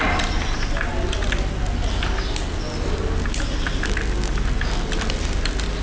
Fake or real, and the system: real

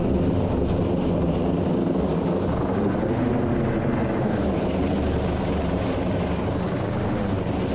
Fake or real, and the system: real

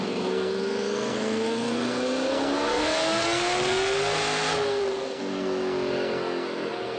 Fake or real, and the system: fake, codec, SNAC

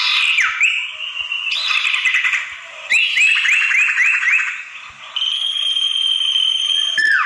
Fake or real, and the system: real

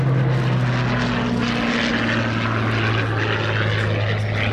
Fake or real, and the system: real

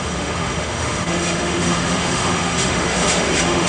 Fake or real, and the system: fake, autoencoder, DAC-VAE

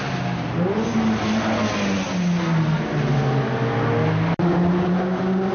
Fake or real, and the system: real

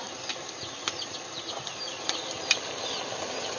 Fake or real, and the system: real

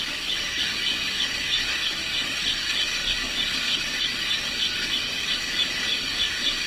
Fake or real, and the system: fake, codec, DAC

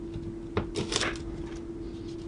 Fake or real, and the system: real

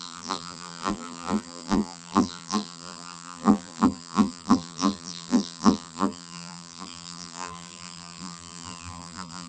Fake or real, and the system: fake, vocoder, BigVGAN v2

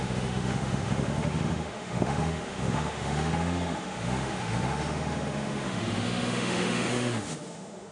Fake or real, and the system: fake, autoencoder, DAC-VAE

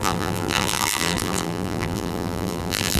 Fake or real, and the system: fake, vocoder, BigVGAN v2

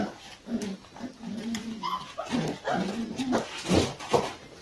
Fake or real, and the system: real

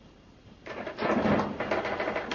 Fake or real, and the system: real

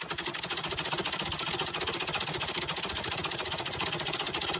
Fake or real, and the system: real